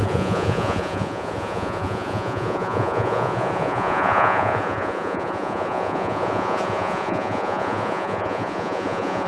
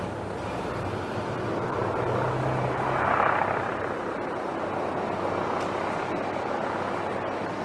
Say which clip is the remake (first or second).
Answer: first